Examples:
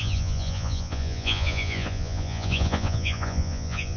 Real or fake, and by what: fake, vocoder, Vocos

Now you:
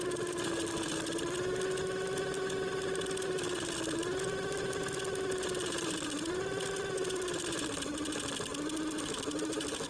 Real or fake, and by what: real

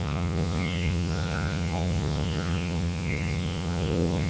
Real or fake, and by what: fake, vocoder, Vocos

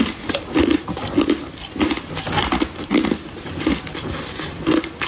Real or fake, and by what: real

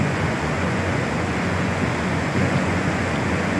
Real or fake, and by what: fake, vocoder, Vocos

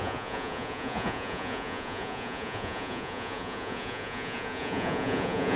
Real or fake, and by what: fake, vocoder, Vocos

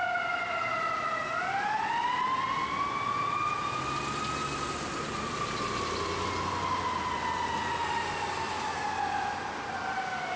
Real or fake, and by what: real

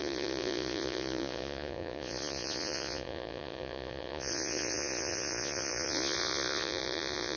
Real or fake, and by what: fake, vocoder, Vocos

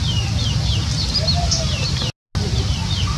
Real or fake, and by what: real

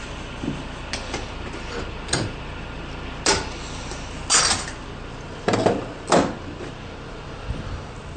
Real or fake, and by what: real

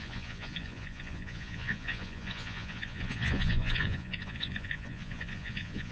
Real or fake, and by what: fake, vocoder, Vocos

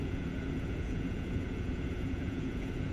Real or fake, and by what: fake, vocoder, Vocos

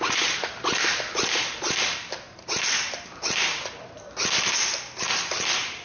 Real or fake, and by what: real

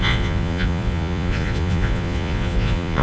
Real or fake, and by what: fake, vocoder, Vocos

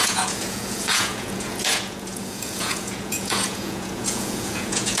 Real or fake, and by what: fake, vocoder, Vocos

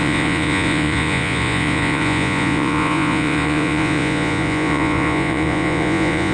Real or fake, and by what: fake, vocoder, Vocos